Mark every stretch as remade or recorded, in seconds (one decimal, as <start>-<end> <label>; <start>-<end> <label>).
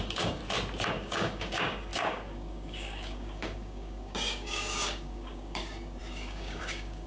0.0-0.4 remade; 0.4-0.9 recorded; 0.9-7.1 remade